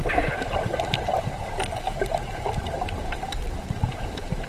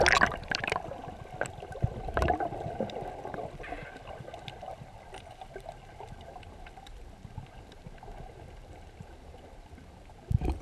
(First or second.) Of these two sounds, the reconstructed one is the first